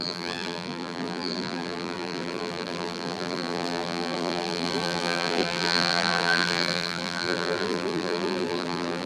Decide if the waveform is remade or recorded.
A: remade